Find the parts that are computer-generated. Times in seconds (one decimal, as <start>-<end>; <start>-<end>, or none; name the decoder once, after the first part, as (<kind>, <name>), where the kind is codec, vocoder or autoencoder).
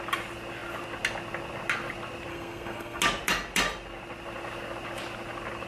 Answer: 2.3-3.0 (codec, SNAC)